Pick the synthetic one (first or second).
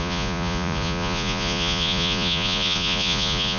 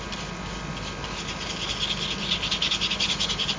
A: first